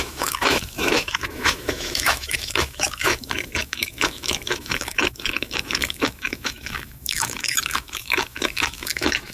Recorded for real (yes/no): no